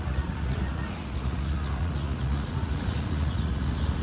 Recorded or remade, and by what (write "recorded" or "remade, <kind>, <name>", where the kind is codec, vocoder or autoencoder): remade, vocoder, Vocos